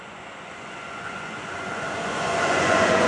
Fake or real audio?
fake